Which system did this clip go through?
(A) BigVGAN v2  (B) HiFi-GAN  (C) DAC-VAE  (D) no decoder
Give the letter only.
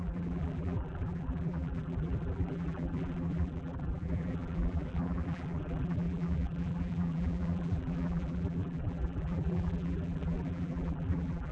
A